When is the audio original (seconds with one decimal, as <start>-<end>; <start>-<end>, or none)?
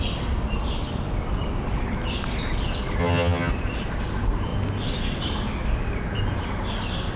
0.0-3.0; 3.5-7.2